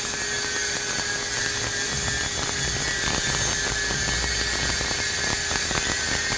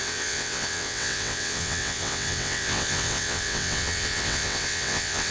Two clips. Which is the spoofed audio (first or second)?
second